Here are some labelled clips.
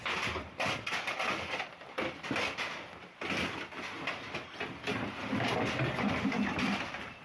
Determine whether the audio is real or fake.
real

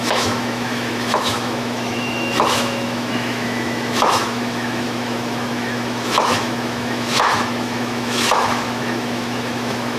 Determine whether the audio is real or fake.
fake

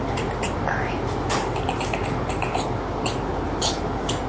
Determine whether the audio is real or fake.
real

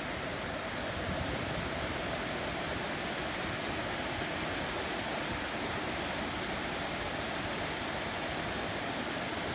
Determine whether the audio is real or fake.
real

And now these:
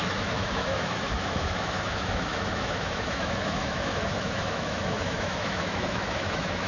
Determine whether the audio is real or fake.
fake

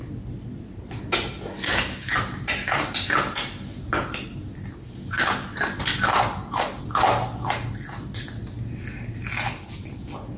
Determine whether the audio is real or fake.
real